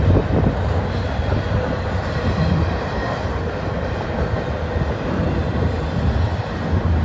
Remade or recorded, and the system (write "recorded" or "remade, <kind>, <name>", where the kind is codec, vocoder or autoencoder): recorded